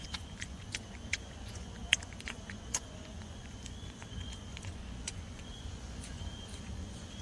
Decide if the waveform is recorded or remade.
remade